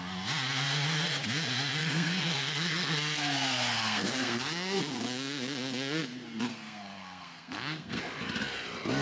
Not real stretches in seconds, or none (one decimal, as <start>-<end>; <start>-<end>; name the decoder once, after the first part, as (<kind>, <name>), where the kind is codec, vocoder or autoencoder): 1.8-4.8 (codec, SNAC); 6.5-8.0